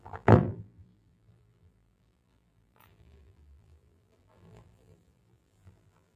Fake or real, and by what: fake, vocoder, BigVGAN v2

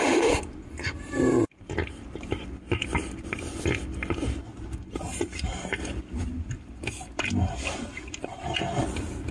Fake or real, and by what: fake, vocoder, BigVGAN v2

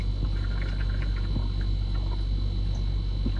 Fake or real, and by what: real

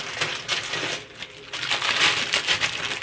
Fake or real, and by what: real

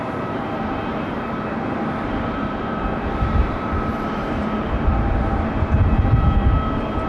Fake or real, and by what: fake, vocoder, BigVGAN v2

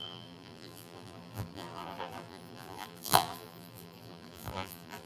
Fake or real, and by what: fake, vocoder, BigVGAN v2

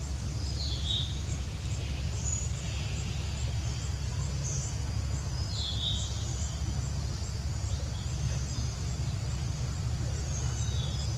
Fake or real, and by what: real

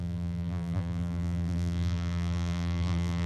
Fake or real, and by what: fake, vocoder, BigVGAN v2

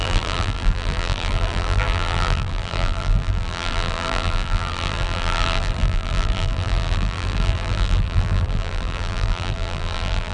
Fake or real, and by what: fake, vocoder, BigVGAN v2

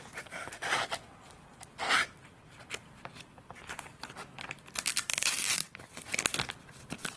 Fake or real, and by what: fake, vocoder, BigVGAN v2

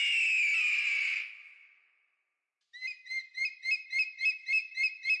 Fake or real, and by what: real